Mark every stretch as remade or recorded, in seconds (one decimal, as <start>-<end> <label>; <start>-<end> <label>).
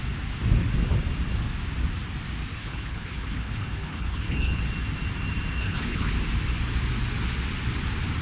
0.0-2.5 recorded; 2.5-4.6 remade; 4.6-5.6 recorded; 5.6-6.1 remade; 6.1-8.2 recorded